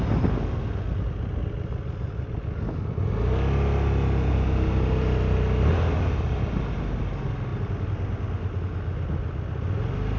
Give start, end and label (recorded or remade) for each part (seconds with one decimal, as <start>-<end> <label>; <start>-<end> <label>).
0.0-10.2 recorded